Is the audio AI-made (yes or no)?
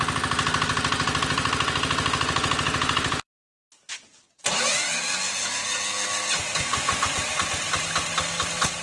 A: no